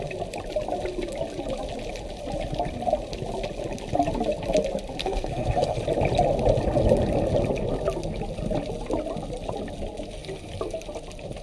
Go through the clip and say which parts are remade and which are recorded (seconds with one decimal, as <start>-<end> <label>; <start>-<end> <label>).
0.0-5.0 recorded; 5.0-5.8 remade; 5.8-11.4 recorded